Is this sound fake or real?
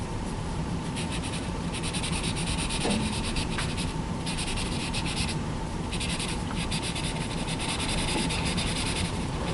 fake